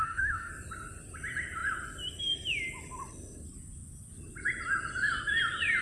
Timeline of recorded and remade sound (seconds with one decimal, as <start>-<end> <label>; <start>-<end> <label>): 0.0-0.5 remade; 0.5-5.8 recorded